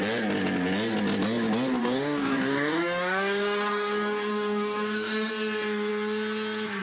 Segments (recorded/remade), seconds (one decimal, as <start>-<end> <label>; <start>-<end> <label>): 0.0-1.8 recorded; 1.8-5.3 remade; 5.3-6.8 recorded